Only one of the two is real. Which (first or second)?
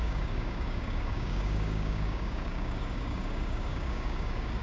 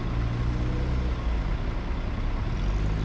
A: second